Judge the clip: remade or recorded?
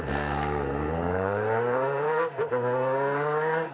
remade